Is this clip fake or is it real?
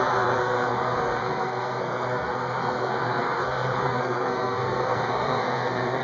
fake